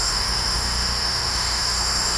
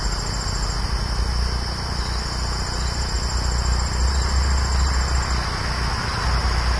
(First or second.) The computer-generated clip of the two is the first